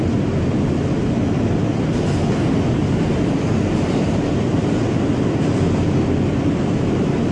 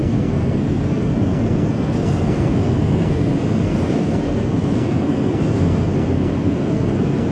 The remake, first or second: second